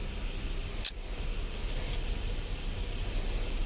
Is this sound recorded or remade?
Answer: recorded